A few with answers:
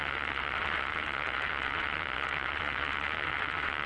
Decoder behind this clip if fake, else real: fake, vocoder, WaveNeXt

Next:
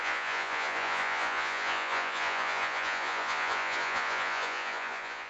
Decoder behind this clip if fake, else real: fake, vocoder, Vocos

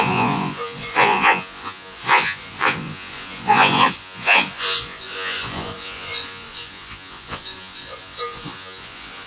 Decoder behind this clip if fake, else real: fake, vocoder, Vocos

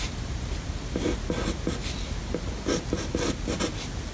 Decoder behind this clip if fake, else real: real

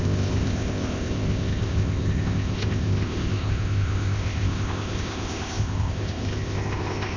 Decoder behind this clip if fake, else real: fake, codec, ZipCodec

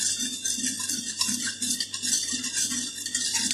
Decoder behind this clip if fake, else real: real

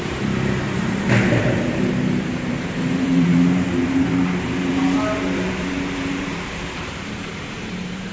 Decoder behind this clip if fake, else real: fake, vocoder, BigVGAN v2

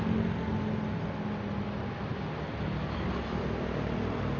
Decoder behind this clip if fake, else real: real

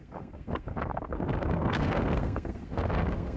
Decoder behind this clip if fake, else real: fake, codec, SNAC